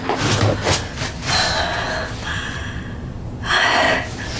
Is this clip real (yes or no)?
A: yes